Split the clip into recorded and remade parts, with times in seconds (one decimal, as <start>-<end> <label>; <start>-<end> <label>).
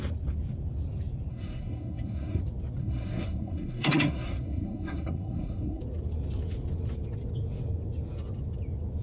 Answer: 0.0-1.3 recorded; 1.3-2.4 remade; 2.4-2.8 recorded; 2.8-5.8 remade; 5.8-9.0 recorded